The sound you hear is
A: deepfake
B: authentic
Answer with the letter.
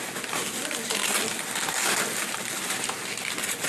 B